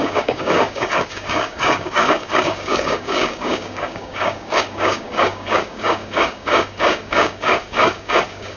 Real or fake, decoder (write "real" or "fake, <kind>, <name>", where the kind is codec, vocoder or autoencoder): fake, codec, DAC